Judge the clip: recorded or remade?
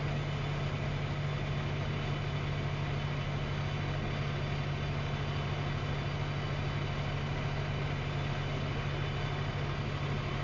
recorded